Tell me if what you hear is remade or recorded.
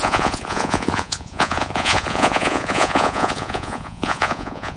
remade